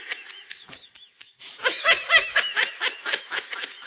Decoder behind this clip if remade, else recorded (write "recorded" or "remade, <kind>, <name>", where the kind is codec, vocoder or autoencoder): remade, autoencoder, DAC-VAE